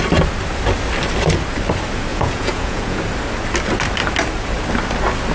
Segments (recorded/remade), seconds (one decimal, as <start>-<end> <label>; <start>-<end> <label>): 0.0-2.1 recorded; 2.1-3.0 remade; 3.0-5.3 recorded